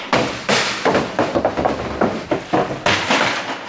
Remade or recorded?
recorded